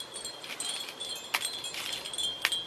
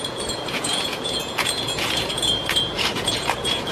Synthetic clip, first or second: second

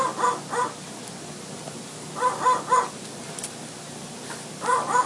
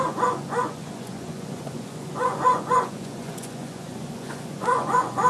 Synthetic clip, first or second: second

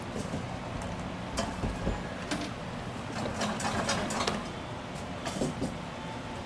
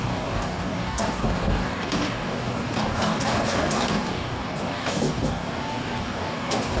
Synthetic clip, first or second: second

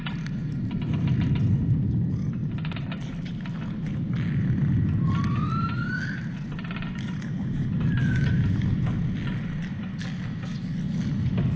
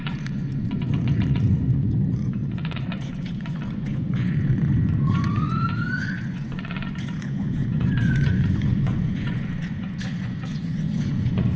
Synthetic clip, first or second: second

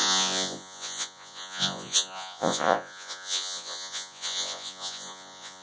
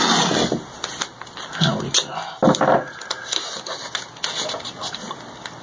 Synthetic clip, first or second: first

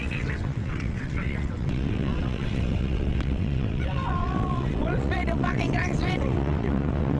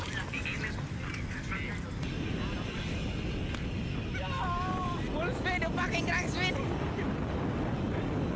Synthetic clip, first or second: first